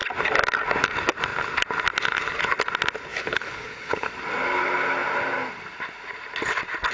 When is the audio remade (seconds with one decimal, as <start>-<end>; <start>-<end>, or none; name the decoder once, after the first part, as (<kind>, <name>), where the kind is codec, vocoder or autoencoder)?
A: 3.1-4.1 (codec, HILCodec)